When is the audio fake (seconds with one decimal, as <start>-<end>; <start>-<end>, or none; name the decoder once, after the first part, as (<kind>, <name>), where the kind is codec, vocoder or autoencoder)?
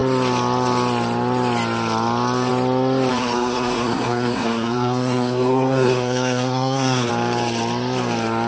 3.1-7.1 (codec, SNAC)